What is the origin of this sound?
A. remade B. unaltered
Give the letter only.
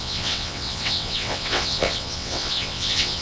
A